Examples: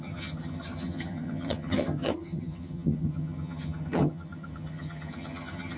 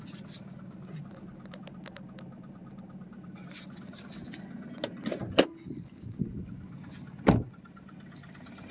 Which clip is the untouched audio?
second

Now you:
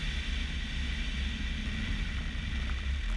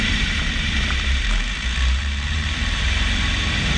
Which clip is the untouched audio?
first